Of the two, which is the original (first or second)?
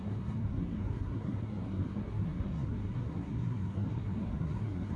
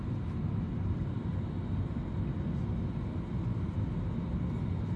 second